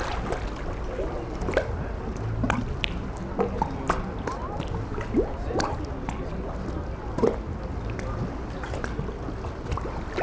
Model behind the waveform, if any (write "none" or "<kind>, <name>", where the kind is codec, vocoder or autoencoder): none